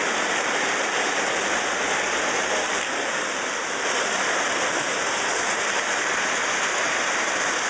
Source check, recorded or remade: recorded